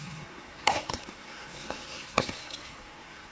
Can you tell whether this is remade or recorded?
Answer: remade